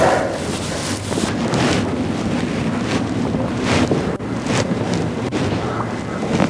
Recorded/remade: recorded